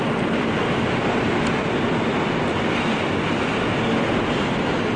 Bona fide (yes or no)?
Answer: yes